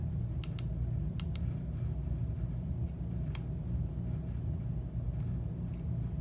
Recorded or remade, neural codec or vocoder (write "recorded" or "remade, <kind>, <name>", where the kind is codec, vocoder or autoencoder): recorded